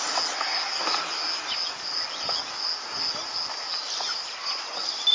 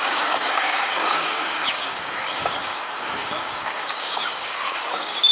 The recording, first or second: first